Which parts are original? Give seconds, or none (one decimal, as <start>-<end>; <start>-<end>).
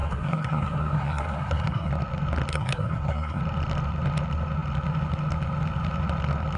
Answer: 1.9-2.5; 3.4-6.6